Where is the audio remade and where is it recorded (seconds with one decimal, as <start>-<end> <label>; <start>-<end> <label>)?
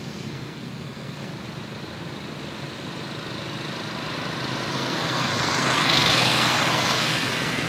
0.0-1.3 remade; 1.3-4.7 recorded; 4.7-7.7 remade